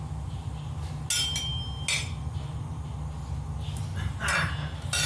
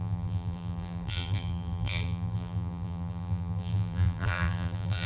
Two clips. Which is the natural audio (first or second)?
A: first